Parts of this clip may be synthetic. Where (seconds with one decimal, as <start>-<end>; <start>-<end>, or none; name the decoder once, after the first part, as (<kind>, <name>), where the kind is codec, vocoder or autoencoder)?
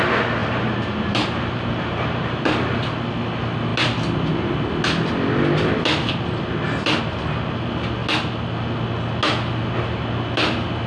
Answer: 0.4-2.4 (vocoder, BigVGAN v2)